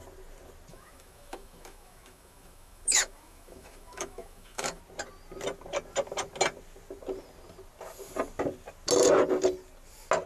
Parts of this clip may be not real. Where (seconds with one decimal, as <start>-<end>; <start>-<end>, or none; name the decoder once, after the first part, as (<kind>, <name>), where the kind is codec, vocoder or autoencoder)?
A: 0.7-4.8 (autoencoder, DAC-VAE)